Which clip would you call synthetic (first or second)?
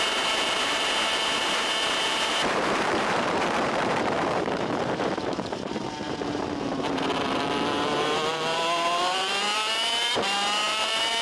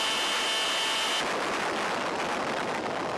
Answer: first